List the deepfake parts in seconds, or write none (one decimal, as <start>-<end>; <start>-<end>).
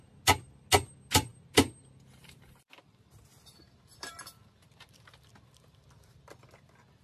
none